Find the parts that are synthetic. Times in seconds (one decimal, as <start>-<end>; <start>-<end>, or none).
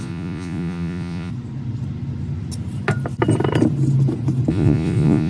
0.0-1.3; 4.5-5.3